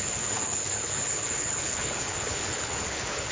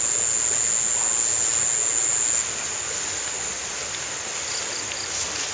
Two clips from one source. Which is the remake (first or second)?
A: first